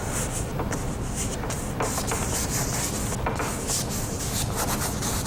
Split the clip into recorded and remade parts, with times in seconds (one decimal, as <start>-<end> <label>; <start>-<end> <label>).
0.0-5.3 recorded